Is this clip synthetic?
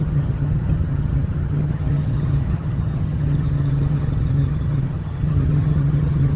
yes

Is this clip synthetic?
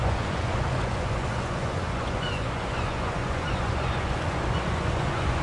yes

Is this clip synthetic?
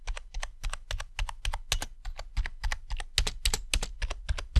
no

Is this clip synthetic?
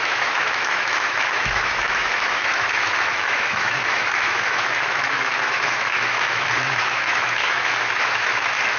yes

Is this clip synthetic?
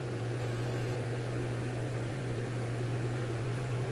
yes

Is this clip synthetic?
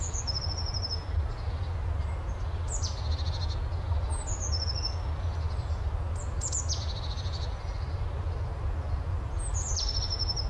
no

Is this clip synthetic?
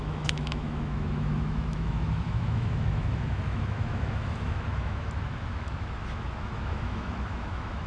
yes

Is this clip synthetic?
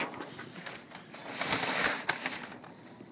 no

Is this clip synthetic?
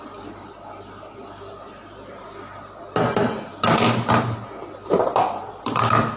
no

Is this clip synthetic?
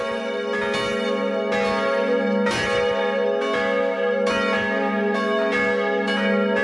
no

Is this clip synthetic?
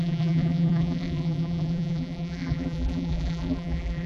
yes